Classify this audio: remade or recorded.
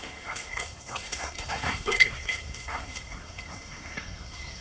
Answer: remade